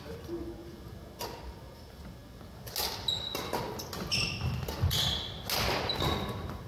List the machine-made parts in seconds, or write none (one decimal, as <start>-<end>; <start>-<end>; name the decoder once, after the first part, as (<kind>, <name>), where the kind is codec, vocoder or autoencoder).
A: 0.6-1.4 (vocoder, BigVGAN v2)